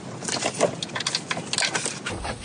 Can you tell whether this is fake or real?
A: real